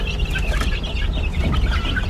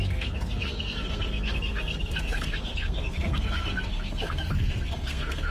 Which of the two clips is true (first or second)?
first